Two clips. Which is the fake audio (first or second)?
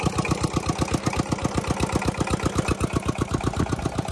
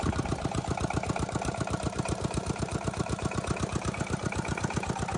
second